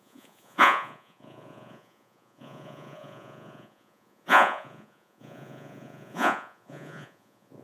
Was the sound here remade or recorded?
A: remade